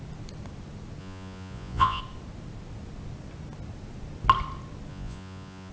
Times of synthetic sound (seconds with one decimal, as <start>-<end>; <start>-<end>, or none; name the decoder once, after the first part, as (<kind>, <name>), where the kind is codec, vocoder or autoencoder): 1.0-2.0 (vocoder, Vocos); 4.9-5.7